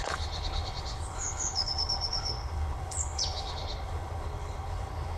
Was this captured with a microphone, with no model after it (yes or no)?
no